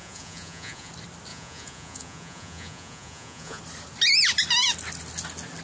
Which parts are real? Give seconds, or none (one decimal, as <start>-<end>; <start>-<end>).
0.9-1.3; 3.6-5.6